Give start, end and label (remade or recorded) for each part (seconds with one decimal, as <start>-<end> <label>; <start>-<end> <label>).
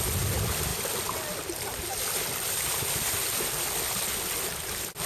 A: 0.0-0.7 recorded; 0.7-3.8 remade; 3.8-5.1 recorded